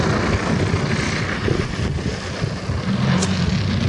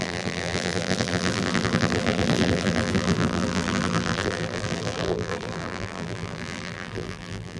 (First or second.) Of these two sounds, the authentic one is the first